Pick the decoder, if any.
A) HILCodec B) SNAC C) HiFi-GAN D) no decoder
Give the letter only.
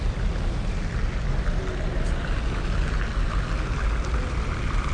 D